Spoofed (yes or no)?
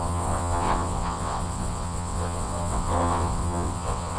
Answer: yes